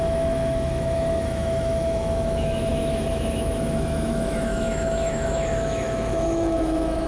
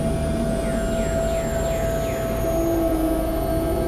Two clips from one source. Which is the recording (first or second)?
second